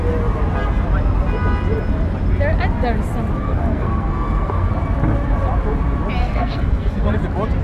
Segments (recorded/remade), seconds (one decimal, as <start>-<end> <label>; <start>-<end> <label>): 0.0-3.4 recorded; 3.4-4.7 remade; 4.7-6.2 recorded; 6.2-7.1 remade; 7.1-7.6 recorded